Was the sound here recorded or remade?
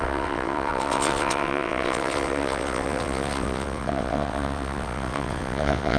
remade